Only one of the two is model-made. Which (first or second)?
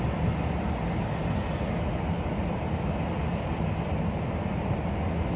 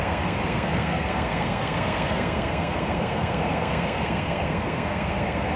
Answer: second